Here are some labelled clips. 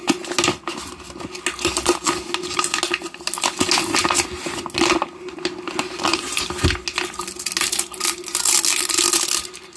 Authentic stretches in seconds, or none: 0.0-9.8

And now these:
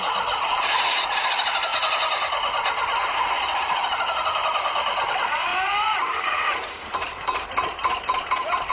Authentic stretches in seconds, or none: 1.7-5.1

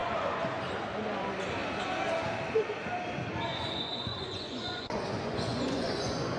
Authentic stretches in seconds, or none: 0.6-3.5

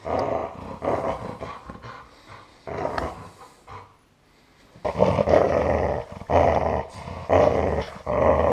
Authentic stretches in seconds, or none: 0.0-8.5

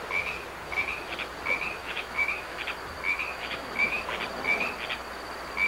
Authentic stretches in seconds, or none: 0.0-1.8; 2.6-3.3; 4.0-5.7